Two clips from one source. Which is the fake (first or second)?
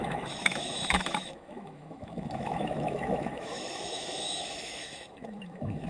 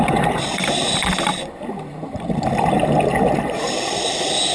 first